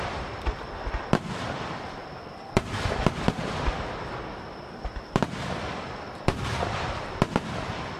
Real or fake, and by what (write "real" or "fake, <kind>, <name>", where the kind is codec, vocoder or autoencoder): fake, vocoder, BigVGAN v2